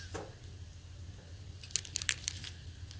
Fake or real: real